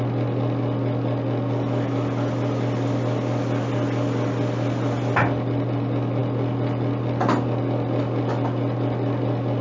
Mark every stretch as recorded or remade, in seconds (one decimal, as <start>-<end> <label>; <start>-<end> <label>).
0.0-9.6 recorded